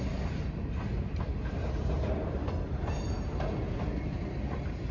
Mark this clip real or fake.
real